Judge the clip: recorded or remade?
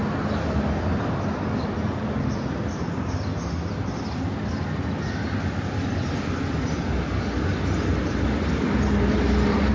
recorded